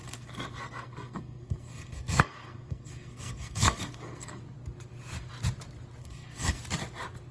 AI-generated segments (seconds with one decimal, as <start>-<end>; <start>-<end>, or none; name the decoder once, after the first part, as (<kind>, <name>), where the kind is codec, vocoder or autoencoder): 0.0-4.4 (codec, SNAC); 6.0-6.6